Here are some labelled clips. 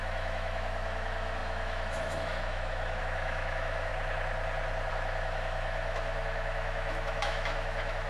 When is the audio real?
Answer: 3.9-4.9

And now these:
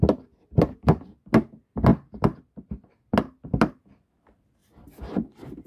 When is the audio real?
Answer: 0.0-5.7

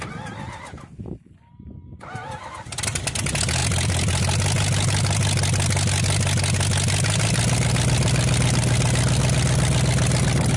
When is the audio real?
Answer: 0.0-10.6

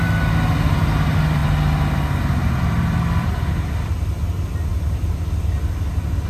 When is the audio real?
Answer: 0.0-6.3